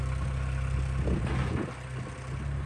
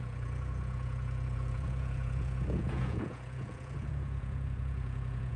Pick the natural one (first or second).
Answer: first